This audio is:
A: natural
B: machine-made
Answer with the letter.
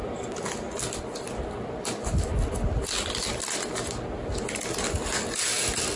A